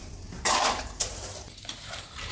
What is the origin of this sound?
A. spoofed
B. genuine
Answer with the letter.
A